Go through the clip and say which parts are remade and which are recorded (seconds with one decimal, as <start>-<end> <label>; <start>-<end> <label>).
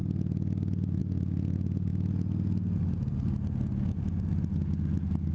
0.0-5.3 recorded